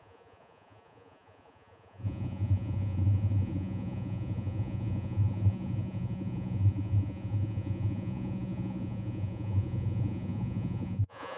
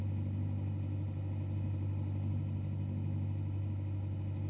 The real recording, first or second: second